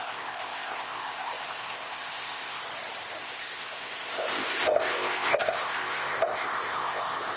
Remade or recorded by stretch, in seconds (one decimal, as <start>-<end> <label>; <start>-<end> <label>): 0.0-2.6 remade; 2.6-3.2 recorded; 3.2-7.4 remade